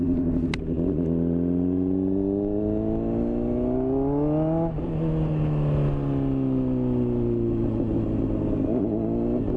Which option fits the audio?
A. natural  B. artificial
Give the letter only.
A